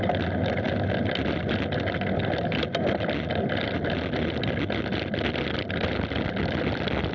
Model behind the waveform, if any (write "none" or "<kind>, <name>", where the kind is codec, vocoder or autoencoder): none